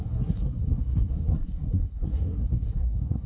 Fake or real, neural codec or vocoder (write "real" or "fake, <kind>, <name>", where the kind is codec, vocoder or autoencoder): fake, codec, SNAC